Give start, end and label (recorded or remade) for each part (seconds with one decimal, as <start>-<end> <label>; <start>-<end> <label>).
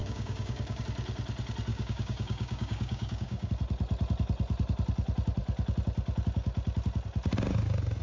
0.0-0.8 remade; 0.8-1.7 recorded; 1.7-3.5 remade; 3.5-8.0 recorded